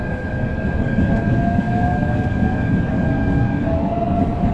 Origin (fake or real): fake